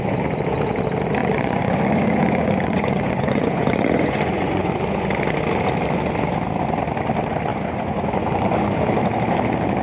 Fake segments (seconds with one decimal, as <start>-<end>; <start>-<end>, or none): 1.2-4.7; 7.5-8.9